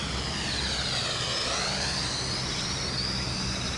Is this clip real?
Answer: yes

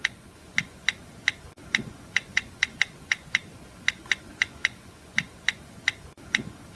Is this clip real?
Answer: no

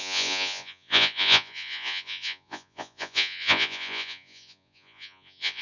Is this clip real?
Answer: no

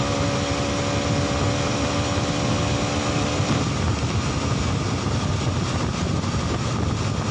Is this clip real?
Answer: yes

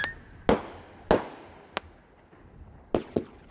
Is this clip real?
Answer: yes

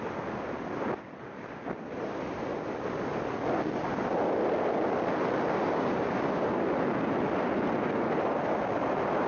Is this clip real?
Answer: yes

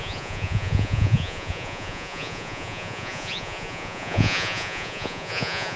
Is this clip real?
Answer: no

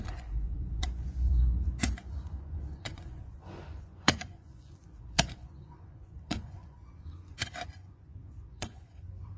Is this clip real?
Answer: no